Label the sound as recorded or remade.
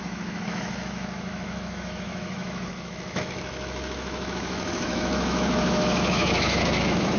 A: remade